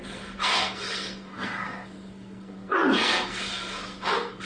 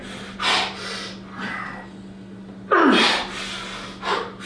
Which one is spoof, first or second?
first